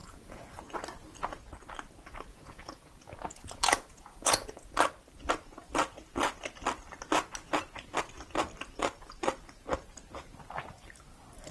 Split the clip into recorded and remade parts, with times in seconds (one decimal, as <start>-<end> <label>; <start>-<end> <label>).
0.0-0.6 remade; 0.6-2.3 recorded; 2.3-4.7 remade; 4.7-11.5 recorded